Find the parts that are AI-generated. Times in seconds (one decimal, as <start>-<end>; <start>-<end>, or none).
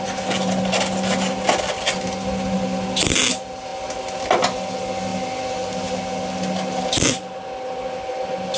none